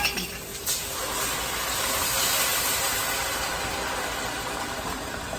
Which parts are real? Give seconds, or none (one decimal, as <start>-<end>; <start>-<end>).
0.0-5.4